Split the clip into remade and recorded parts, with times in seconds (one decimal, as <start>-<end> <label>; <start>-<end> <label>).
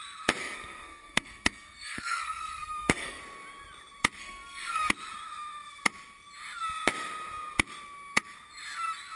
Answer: 0.0-0.4 recorded; 0.4-3.2 remade; 3.2-4.2 recorded; 4.2-4.9 remade; 4.9-9.2 recorded